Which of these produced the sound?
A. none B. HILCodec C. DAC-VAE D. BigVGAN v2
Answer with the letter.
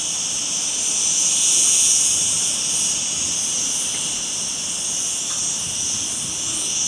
D